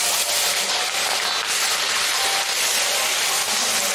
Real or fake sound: real